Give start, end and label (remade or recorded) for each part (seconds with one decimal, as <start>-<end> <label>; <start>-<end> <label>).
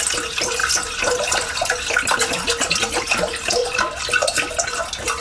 0.0-3.6 recorded; 3.6-4.5 remade; 4.5-5.2 recorded